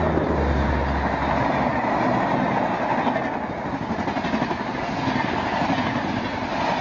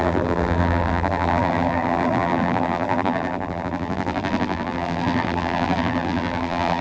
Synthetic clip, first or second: second